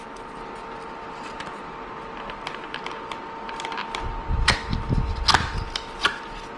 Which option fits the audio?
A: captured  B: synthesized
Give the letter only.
A